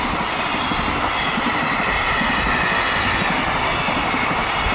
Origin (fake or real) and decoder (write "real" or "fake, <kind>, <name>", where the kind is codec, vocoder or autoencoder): real